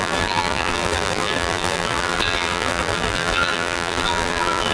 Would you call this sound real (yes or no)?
no